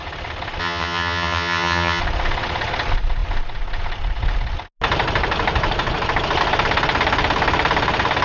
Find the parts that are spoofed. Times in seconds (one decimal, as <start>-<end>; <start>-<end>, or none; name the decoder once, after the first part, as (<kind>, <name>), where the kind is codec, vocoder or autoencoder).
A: 0.6-2.0 (vocoder, HiFi-GAN)